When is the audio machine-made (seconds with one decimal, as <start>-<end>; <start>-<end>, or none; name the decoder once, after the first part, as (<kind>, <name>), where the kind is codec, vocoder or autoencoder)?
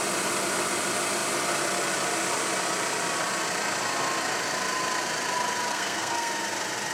5.7-6.3 (codec, SNAC)